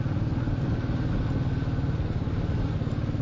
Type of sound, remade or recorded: recorded